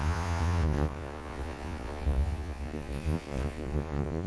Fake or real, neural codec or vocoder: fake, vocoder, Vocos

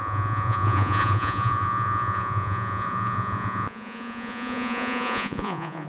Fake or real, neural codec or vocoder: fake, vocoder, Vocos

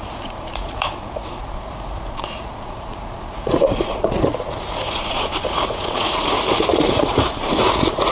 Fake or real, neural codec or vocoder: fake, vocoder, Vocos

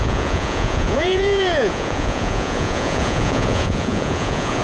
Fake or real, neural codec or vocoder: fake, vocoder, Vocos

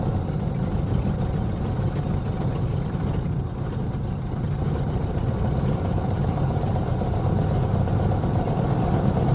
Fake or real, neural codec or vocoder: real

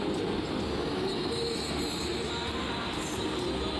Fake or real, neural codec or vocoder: real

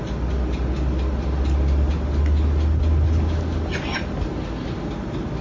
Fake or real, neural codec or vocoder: real